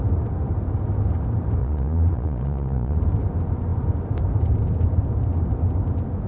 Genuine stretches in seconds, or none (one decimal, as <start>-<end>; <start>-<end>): 0.0-1.6; 3.0-6.3